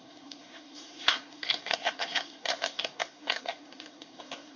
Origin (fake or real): fake